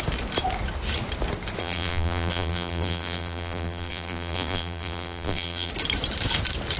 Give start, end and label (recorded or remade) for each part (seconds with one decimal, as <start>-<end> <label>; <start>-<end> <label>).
0.0-1.6 recorded; 1.6-5.7 remade; 5.7-6.8 recorded